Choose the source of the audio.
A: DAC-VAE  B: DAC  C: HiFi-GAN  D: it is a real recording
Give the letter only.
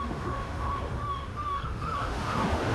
A